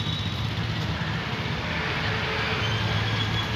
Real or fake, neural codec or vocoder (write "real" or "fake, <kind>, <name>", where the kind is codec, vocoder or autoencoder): real